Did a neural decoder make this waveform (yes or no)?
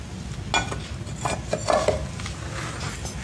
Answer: no